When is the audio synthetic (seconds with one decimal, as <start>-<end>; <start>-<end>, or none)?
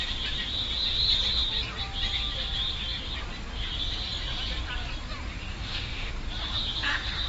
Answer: 5.5-6.1